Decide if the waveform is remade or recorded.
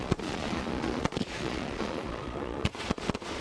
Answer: remade